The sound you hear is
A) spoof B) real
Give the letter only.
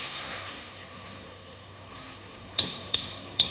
A